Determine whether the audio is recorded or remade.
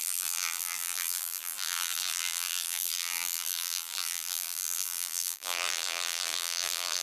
remade